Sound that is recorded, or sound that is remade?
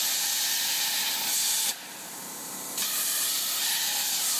recorded